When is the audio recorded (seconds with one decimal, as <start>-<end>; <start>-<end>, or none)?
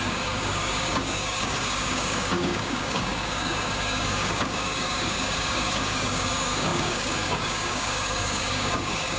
none